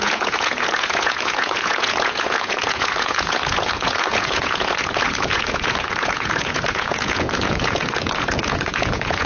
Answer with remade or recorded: remade